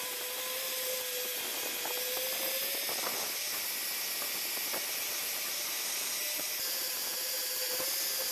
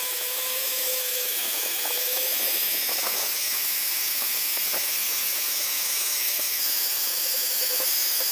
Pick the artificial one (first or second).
second